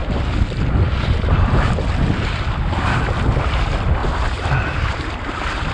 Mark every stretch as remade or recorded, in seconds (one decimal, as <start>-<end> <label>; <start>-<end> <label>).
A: 0.0-3.4 recorded; 3.4-5.7 remade